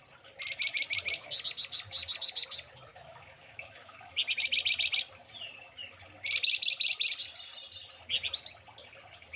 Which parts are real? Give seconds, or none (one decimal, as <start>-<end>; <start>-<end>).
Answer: 0.0-2.9; 4.2-9.4

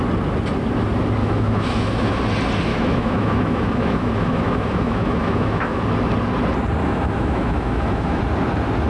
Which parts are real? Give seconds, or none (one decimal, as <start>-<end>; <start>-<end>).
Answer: 0.0-1.2; 2.2-2.7; 5.8-6.8; 8.2-8.9